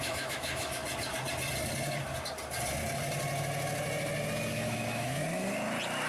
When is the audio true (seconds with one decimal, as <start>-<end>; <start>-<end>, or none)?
0.8-4.5; 5.2-6.1